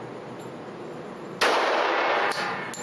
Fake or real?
real